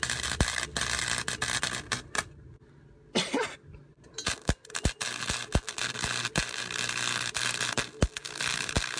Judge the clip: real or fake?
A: real